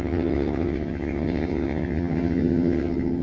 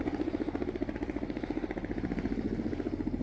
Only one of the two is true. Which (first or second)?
second